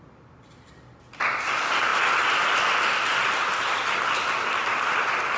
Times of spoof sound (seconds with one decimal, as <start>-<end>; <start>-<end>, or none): none